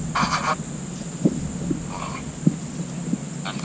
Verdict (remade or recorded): recorded